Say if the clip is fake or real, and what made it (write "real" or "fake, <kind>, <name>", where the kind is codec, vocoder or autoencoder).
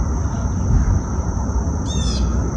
real